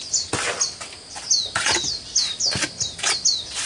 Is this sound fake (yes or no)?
no